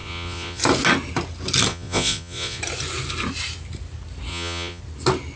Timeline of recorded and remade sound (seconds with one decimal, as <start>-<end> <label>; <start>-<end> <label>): 0.0-0.6 remade; 0.6-1.7 recorded; 1.7-2.6 remade; 2.6-4.3 recorded; 4.3-4.8 remade; 4.8-5.4 recorded